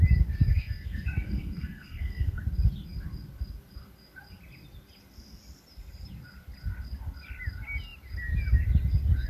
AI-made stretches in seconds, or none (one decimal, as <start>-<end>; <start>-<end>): 0.5-2.4